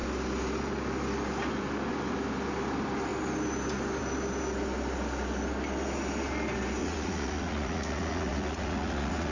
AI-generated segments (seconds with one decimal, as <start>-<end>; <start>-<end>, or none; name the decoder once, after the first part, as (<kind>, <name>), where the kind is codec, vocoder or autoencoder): 6.8-9.3 (vocoder, Vocos)